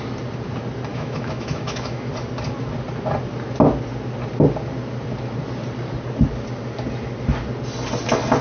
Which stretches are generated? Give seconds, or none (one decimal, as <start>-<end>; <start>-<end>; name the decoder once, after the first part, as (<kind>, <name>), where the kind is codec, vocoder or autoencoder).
0.9-2.1 (autoencoder, DAC-VAE)